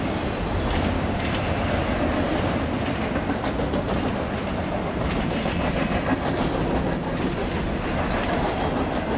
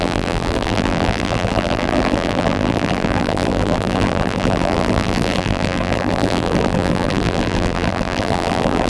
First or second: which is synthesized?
second